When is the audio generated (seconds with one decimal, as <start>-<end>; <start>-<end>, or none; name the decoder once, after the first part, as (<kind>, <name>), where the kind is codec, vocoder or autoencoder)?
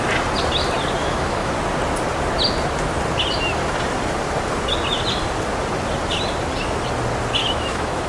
1.0-1.5 (autoencoder, DAC-VAE); 7.4-8.1